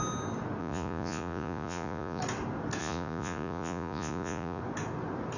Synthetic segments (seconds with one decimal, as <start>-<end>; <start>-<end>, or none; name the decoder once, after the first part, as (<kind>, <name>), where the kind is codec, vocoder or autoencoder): 0.6-2.2 (vocoder, Vocos); 2.8-4.6